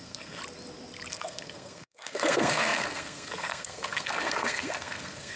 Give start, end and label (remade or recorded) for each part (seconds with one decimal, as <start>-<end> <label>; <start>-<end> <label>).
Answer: 0.0-0.4 remade; 0.4-1.1 recorded; 1.1-5.4 remade